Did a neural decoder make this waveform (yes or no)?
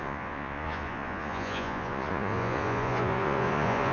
yes